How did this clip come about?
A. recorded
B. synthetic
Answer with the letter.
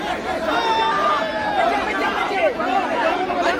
B